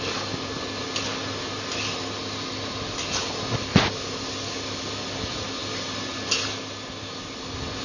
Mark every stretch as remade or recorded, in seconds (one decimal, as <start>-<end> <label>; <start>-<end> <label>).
0.0-7.8 recorded